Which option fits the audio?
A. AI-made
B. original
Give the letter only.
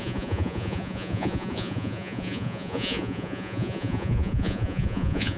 A